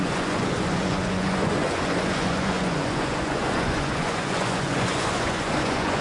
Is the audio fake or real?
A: fake